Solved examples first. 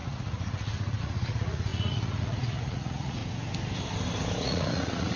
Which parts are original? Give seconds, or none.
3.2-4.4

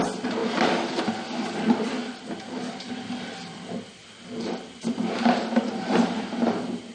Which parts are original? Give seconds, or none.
0.0-2.0; 4.7-6.9